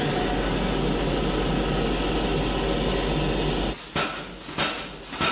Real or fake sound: real